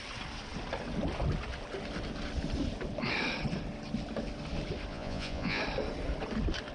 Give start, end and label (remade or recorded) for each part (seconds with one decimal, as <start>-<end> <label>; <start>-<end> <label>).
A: 0.0-4.9 recorded; 4.9-5.6 remade; 5.6-6.7 recorded